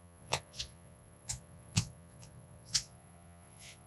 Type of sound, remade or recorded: remade